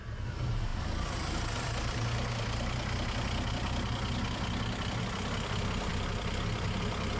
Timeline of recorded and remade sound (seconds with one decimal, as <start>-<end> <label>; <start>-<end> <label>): 0.0-7.2 recorded